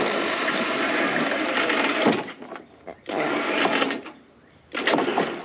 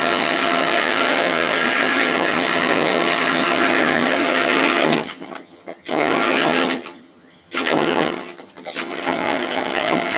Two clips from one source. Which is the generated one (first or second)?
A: second